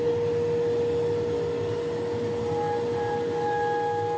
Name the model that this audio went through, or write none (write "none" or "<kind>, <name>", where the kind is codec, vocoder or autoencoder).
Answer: none